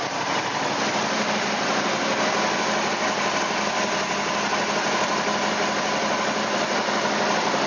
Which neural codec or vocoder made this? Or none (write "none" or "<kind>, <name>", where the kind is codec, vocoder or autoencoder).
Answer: none